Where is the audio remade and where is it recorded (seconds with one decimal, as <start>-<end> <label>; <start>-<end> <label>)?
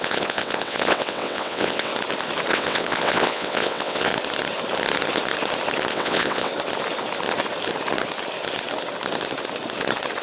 0.0-1.9 remade; 1.9-2.5 recorded; 2.5-4.1 remade; 4.1-5.9 recorded; 5.9-6.5 remade; 6.5-10.2 recorded